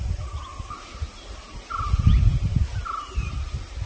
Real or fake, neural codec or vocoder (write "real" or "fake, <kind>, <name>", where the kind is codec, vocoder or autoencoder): real